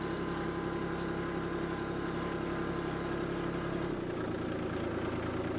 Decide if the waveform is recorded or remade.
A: recorded